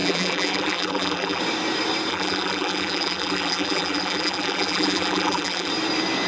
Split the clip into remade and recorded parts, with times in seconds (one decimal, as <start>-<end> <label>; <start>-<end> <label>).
0.0-1.4 remade; 1.4-2.1 recorded; 2.1-5.7 remade; 5.7-6.3 recorded